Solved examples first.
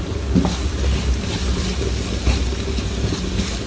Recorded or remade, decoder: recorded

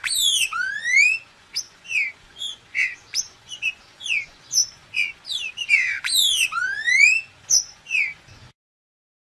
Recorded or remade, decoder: remade, vocoder, Vocos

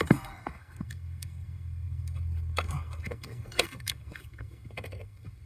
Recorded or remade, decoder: remade, codec, SNAC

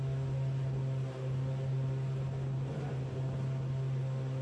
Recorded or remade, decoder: recorded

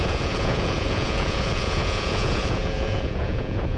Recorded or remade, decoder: remade, vocoder, Vocos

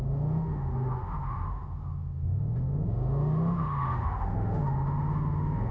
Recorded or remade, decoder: remade, autoencoder, DAC-VAE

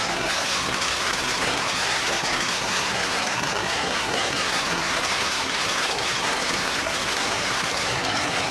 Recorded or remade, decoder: remade, codec, SNAC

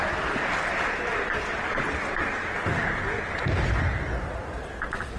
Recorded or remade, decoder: recorded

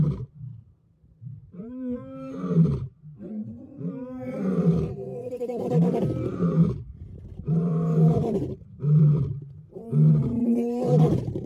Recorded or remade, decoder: remade, vocoder, BigVGAN v2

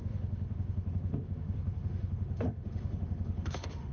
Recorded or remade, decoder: remade, autoencoder, DAC-VAE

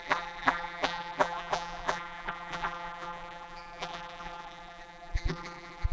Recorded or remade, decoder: remade, vocoder, BigVGAN v2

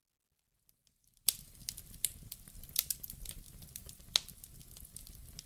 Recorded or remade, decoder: recorded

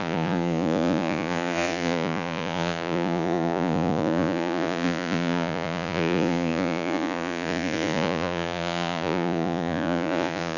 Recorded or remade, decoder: remade, vocoder, Vocos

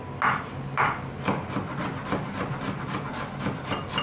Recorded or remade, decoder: recorded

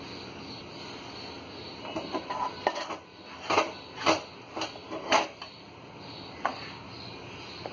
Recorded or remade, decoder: recorded